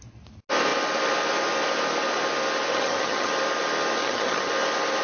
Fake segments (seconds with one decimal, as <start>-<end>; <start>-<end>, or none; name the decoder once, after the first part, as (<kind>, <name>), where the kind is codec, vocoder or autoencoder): 2.7-3.3 (vocoder, HiFi-GAN); 4.0-4.5